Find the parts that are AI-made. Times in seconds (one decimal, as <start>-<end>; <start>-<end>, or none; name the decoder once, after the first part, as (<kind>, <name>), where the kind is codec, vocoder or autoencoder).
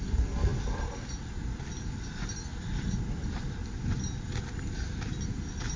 0.5-1.6 (vocoder, BigVGAN v2); 2.5-3.6